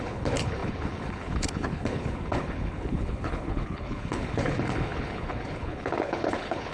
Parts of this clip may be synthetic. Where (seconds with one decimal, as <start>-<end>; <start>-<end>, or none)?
0.0-6.7